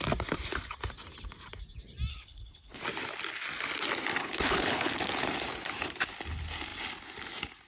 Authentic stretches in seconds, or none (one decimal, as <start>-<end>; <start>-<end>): 0.0-2.1; 2.8-4.2; 4.9-7.7